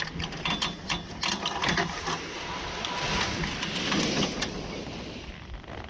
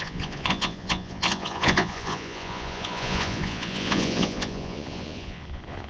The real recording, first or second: first